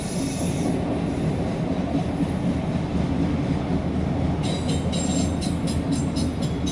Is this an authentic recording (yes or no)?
yes